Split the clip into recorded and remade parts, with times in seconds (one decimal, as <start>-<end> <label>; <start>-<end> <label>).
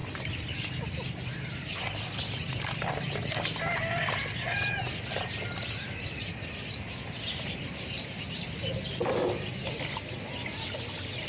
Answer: 0.0-11.3 recorded